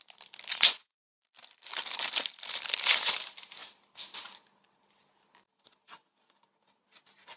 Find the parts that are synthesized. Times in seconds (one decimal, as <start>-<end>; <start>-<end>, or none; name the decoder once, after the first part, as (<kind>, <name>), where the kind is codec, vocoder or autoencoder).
0.5-1.1 (vocoder, Vocos)